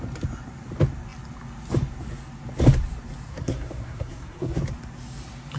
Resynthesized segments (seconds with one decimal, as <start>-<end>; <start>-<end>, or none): 3.3-4.6